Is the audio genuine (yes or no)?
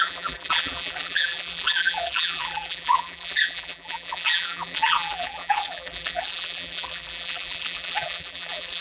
no